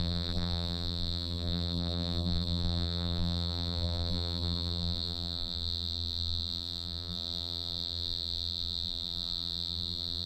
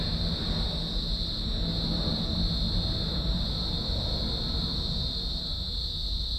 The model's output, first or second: first